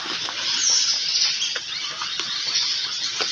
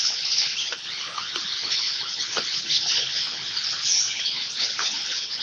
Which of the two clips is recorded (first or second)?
first